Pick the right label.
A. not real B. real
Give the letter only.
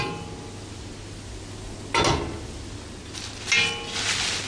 B